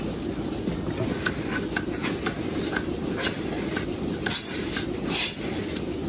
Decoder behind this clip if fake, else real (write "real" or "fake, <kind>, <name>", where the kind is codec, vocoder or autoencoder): real